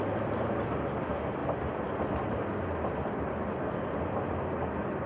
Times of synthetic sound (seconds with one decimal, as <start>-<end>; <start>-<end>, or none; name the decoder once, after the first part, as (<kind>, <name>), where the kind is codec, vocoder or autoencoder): none